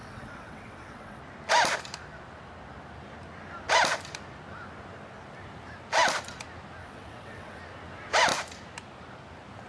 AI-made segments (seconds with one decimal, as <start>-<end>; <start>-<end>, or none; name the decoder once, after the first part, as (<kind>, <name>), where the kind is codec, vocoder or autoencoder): 0.0-1.2 (vocoder, WaveNeXt); 6.8-7.6